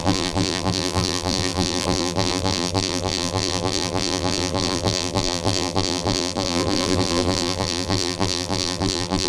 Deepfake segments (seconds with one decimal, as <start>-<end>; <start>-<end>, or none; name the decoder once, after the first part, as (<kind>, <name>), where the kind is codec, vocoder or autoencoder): 0.0-9.3 (vocoder, BigVGAN v2)